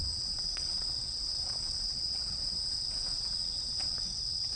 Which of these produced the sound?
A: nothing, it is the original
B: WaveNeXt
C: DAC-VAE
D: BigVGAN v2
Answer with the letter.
B